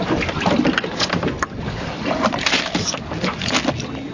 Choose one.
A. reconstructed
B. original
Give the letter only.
B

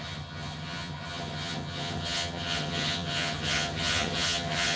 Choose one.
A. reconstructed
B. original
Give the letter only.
A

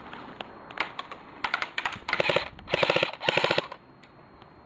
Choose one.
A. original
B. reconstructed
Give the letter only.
A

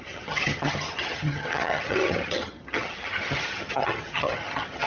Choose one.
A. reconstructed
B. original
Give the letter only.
A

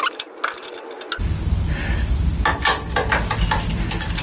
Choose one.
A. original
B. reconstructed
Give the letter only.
A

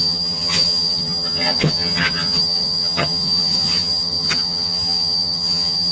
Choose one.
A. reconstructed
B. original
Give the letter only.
A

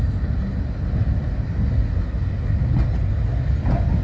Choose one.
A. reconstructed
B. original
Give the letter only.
B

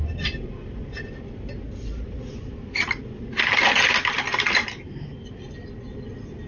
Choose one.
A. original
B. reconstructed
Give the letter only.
A